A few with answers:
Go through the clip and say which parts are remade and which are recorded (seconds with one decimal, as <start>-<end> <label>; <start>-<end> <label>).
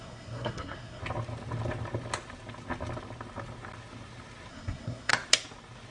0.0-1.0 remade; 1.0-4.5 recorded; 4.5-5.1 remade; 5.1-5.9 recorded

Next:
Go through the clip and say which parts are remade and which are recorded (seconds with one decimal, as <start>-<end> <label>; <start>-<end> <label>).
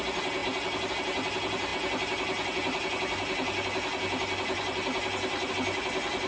0.0-6.3 recorded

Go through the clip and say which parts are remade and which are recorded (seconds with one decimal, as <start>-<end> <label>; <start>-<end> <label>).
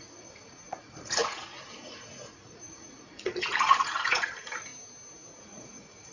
0.0-4.7 remade; 4.7-5.4 recorded; 5.4-6.1 remade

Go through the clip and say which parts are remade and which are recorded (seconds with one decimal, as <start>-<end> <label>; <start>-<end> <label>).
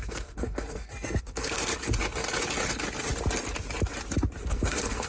0.0-1.7 remade; 1.7-4.4 recorded; 4.4-5.1 remade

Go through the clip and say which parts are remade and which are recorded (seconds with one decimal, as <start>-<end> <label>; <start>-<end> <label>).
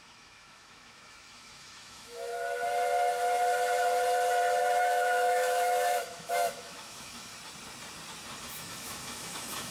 0.0-2.3 remade; 2.3-4.6 recorded; 4.6-7.3 remade; 7.3-8.4 recorded; 8.4-9.7 remade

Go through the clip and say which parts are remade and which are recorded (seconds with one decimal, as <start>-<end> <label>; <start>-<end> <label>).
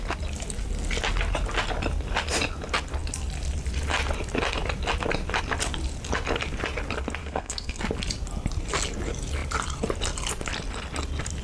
0.0-7.2 recorded; 7.2-7.8 remade; 7.8-11.4 recorded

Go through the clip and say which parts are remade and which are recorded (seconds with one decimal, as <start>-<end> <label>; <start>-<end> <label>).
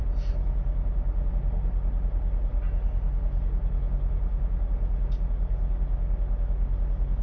0.0-7.2 recorded